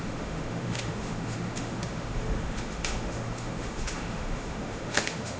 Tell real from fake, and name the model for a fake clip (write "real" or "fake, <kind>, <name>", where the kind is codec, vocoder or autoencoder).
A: fake, autoencoder, DAC-VAE